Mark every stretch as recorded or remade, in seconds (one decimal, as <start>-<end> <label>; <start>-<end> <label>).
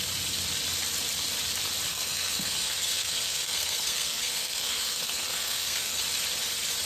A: 0.0-1.9 recorded; 1.9-6.0 remade; 6.0-6.9 recorded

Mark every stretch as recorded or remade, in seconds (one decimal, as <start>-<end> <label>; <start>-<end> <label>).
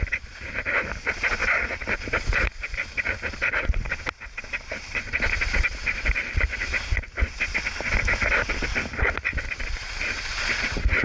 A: 0.0-11.0 recorded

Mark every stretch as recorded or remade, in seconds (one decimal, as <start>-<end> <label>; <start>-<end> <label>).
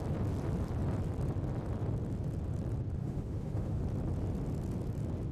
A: 0.0-3.0 recorded; 3.0-3.8 remade; 3.8-5.3 recorded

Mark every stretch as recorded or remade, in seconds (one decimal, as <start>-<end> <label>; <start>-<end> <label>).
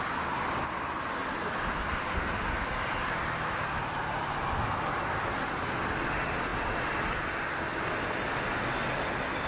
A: 0.0-9.5 recorded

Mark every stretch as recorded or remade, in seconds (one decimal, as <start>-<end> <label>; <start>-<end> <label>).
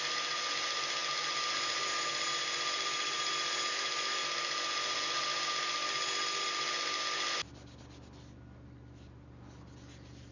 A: 0.0-10.3 recorded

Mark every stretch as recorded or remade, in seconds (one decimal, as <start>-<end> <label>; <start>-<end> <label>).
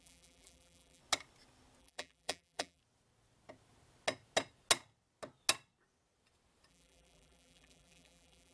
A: 0.0-1.0 remade; 1.0-1.8 recorded; 1.8-2.8 remade; 2.8-6.7 recorded; 6.7-8.5 remade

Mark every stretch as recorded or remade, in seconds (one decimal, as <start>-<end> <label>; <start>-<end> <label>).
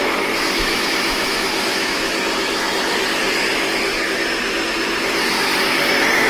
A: 0.0-2.7 remade; 2.7-6.3 recorded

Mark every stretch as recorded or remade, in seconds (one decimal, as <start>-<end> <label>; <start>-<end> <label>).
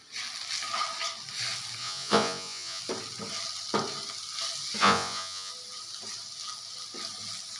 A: 0.0-1.8 recorded; 1.8-2.8 remade; 2.8-4.8 recorded; 4.8-5.5 remade; 5.5-7.6 recorded